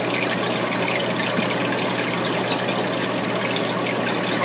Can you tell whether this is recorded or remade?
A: recorded